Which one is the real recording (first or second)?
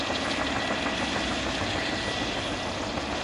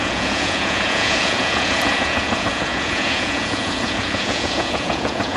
first